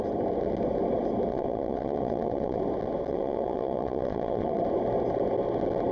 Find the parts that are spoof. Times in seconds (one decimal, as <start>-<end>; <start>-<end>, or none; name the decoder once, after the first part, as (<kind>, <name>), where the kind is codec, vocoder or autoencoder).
1.3-2.6 (vocoder, WaveNeXt); 3.1-4.6